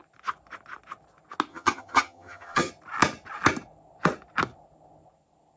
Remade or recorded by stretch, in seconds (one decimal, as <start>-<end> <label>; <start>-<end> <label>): 0.0-1.5 recorded; 1.5-2.7 remade; 2.7-5.6 recorded